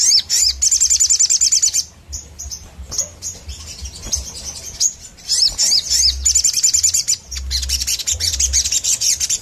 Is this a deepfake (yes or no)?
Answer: no